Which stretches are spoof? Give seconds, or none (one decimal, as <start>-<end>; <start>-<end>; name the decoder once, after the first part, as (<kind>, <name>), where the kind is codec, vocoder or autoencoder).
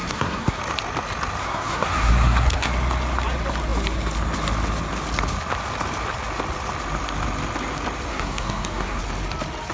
0.0-0.6 (codec, SNAC); 1.4-2.7; 8.1-9.0